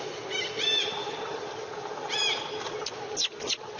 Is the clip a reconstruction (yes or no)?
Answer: no